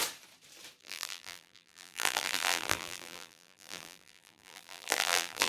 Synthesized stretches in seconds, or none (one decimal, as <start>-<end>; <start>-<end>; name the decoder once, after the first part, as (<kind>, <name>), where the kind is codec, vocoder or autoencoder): 0.8-5.5 (vocoder, BigVGAN v2)